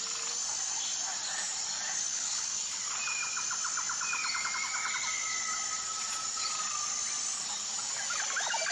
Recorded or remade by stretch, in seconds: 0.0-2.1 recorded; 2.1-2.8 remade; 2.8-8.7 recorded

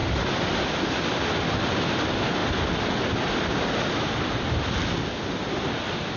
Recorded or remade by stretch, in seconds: 0.0-6.2 recorded